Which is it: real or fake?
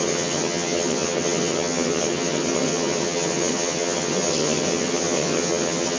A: fake